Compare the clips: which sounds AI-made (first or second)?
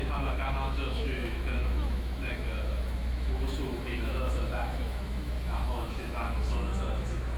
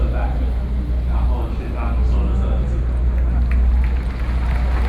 first